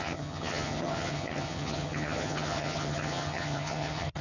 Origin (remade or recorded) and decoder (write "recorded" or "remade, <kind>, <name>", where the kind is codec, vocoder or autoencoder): remade, vocoder, HiFi-GAN